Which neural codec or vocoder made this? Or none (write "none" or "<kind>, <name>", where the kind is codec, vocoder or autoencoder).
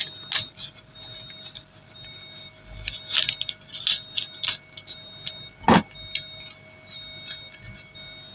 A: none